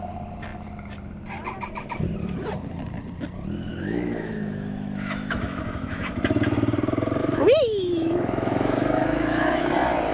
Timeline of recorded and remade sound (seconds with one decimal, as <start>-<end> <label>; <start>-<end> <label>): 0.0-3.7 recorded; 3.7-6.1 remade; 6.1-7.2 recorded; 7.2-9.7 remade; 9.7-10.1 recorded